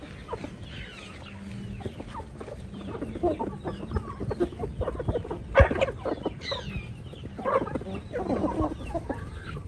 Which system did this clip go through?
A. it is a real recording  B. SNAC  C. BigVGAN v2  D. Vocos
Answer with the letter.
A